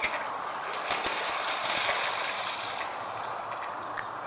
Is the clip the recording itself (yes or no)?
yes